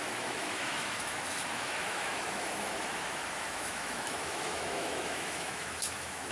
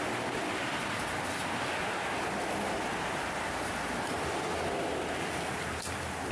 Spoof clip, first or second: first